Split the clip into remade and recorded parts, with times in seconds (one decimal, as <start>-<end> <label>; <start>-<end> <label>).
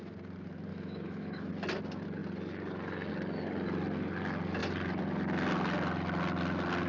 0.0-0.7 recorded; 0.7-1.5 remade; 1.5-6.9 recorded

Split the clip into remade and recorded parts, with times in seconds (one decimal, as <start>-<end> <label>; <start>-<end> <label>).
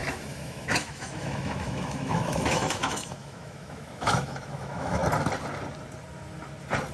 0.0-5.0 remade; 5.0-6.9 recorded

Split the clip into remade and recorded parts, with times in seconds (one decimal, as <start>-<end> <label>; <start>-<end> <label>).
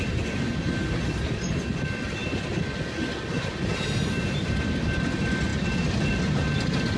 0.0-7.0 recorded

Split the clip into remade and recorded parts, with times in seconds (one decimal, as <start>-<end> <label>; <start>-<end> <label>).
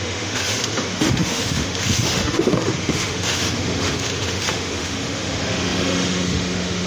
0.0-6.9 remade